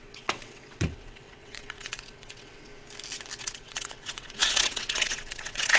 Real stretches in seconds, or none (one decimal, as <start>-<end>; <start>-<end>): 2.7-3.4